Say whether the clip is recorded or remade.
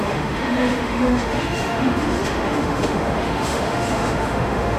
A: remade